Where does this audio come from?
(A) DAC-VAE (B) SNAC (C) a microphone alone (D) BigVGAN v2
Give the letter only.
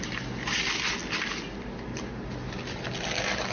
C